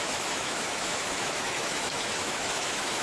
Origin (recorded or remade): remade